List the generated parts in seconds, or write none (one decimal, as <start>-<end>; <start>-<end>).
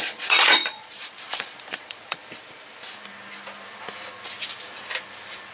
0.0-2.2